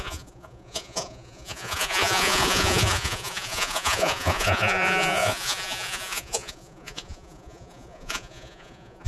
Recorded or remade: remade